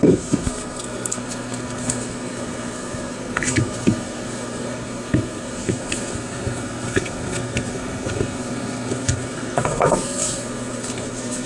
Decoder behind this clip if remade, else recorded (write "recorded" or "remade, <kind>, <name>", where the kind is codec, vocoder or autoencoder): remade, codec, SNAC